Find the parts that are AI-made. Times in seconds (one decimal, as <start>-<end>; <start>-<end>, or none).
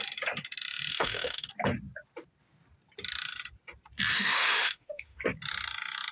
0.9-1.5; 4.1-5.2